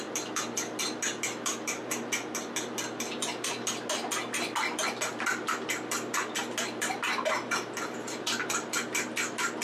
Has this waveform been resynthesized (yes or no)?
no